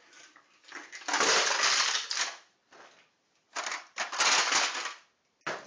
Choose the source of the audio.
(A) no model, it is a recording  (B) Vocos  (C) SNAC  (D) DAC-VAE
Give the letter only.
A